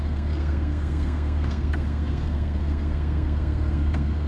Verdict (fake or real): fake